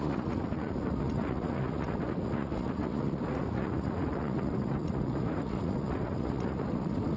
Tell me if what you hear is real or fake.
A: fake